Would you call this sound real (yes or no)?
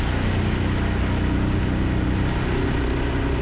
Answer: yes